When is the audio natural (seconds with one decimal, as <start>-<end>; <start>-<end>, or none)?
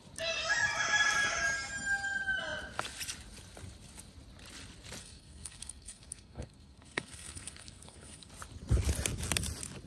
0.0-5.0; 8.3-9.9